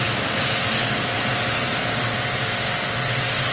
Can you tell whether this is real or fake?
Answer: real